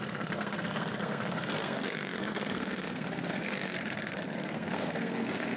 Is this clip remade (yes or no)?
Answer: yes